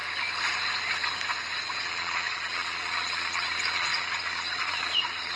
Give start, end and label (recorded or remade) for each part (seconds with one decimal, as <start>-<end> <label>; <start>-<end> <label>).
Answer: 0.0-1.8 recorded; 1.8-5.4 remade